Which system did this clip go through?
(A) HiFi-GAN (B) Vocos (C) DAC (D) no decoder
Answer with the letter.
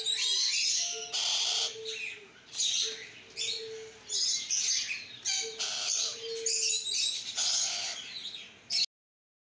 D